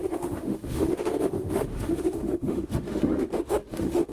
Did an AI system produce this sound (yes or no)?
yes